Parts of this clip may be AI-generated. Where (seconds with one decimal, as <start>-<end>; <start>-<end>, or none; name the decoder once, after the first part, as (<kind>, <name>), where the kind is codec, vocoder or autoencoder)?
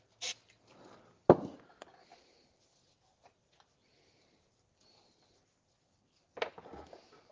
none